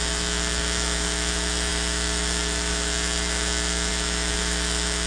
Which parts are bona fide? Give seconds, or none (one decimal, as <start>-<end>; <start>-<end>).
none